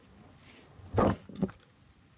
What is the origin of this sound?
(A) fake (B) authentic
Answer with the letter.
B